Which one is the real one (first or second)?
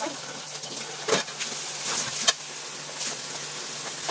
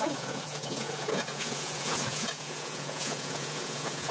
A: first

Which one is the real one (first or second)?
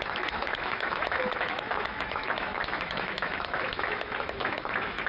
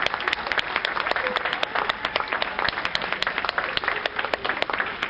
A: second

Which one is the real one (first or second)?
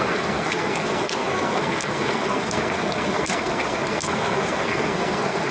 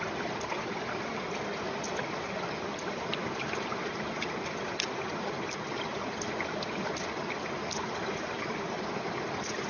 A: second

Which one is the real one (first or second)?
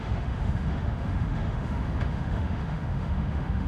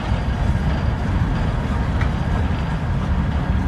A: second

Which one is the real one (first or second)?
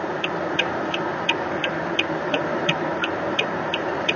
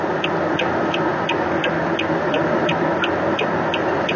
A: second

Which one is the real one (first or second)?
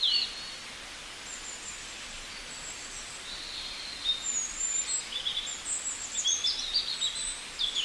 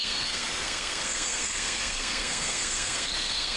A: first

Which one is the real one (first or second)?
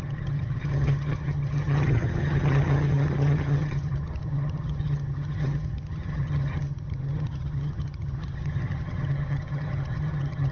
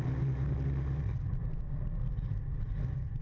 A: second